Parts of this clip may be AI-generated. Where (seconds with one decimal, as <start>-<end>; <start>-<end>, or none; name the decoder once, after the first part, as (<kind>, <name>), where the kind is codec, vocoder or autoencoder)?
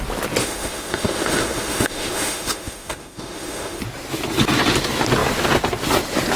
0.4-3.8 (autoencoder, DAC-VAE)